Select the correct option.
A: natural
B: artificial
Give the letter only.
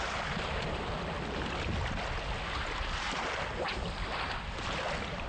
A